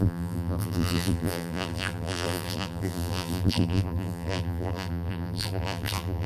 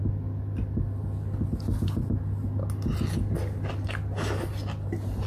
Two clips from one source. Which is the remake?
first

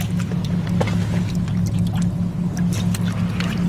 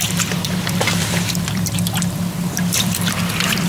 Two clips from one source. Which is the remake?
second